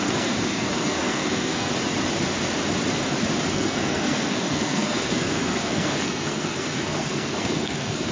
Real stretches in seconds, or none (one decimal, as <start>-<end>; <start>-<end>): 1.7-3.5